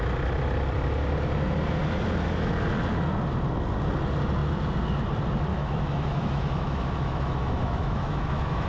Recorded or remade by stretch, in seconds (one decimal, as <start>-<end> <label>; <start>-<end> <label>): 0.0-5.5 recorded; 5.5-8.7 remade